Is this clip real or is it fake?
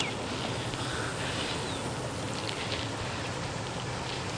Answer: real